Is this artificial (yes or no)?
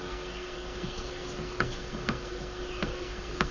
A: yes